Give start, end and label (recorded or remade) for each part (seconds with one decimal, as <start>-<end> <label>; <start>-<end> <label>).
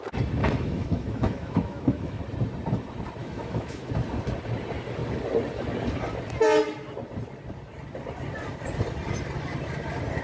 0.0-0.4 recorded; 0.4-2.2 remade; 2.2-3.2 recorded; 3.2-3.9 remade; 3.9-10.2 recorded